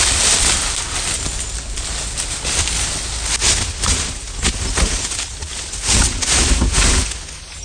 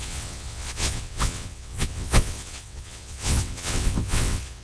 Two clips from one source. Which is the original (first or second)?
first